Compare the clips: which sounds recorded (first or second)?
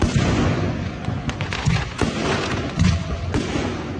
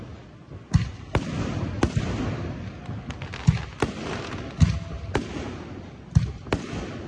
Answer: second